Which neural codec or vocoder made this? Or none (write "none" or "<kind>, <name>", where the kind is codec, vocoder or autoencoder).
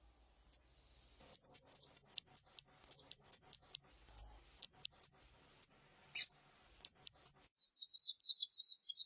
none